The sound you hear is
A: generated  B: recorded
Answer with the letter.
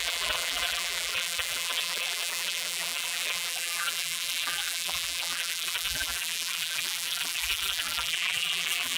A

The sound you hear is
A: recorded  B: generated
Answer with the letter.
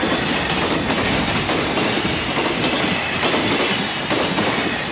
A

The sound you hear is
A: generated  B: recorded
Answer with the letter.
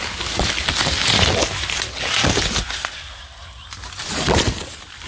B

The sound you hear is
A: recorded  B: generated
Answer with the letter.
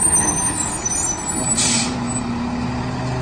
A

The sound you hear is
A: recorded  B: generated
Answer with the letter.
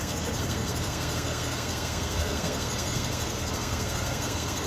B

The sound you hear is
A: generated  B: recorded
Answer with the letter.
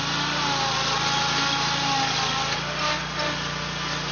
B